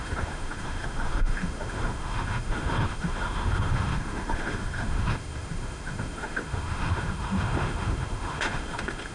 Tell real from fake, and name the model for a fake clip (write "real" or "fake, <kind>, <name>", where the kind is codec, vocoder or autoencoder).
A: fake, autoencoder, DAC-VAE